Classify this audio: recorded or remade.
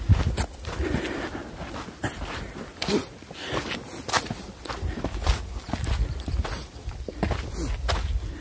recorded